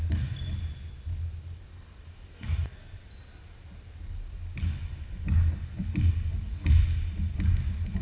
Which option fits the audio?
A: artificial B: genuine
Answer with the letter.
B